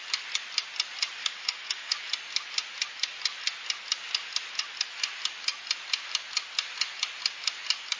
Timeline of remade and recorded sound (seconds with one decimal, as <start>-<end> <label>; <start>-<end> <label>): 0.0-1.2 recorded; 1.2-1.9 remade; 1.9-8.0 recorded